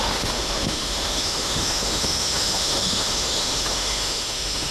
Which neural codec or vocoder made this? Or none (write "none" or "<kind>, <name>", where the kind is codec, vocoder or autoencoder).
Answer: autoencoder, DAC-VAE